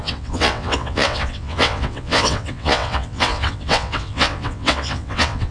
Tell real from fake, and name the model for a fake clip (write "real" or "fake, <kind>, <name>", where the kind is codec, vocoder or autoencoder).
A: fake, vocoder, WaveNeXt